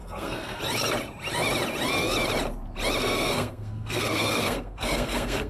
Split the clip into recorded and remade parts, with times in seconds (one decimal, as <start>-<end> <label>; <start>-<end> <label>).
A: 0.0-0.6 remade; 0.6-3.0 recorded; 3.0-5.5 remade